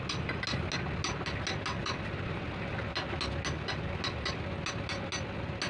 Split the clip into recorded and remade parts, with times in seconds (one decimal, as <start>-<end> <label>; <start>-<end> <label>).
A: 0.0-5.7 recorded